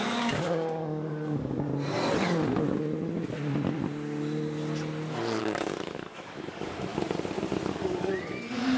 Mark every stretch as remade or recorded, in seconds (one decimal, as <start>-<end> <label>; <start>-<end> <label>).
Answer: 0.0-1.7 remade; 1.7-5.4 recorded; 5.4-6.9 remade; 6.9-7.7 recorded; 7.7-8.8 remade